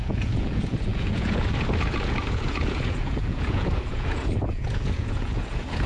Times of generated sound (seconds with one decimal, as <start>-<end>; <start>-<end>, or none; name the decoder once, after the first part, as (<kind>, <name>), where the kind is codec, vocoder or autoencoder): 0.0-5.9 (vocoder, Vocos)